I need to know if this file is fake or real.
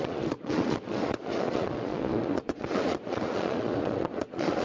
fake